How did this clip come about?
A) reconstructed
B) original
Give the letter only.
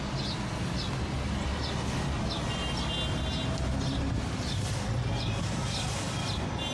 B